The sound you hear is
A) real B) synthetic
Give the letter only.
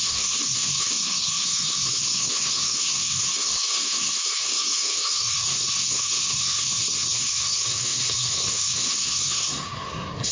B